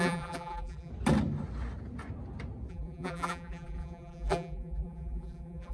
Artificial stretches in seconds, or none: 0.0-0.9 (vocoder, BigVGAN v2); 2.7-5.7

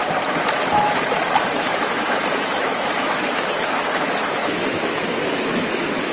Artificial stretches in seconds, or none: 1.5-6.1 (autoencoder, DAC-VAE)